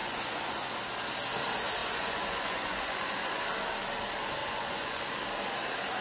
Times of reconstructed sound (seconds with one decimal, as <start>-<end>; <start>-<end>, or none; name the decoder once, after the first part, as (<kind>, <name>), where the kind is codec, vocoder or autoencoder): 0.0-0.7 (vocoder, Vocos); 1.8-3.4; 4.4-5.0